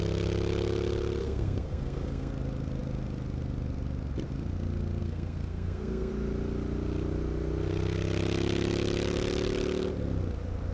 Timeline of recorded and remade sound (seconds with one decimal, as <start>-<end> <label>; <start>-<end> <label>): 0.0-1.2 recorded; 1.2-2.3 remade; 2.3-5.0 recorded; 5.0-6.1 remade; 6.1-10.7 recorded